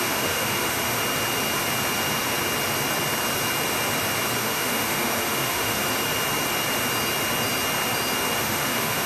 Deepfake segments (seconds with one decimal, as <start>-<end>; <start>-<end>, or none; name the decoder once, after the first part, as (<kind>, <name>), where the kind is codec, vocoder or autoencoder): 0.0-1.0 (autoencoder, DAC-VAE); 4.4-5.8; 8.4-9.1